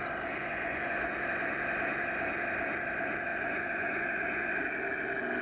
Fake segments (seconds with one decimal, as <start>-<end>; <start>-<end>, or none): 0.4-1.1; 3.3-4.5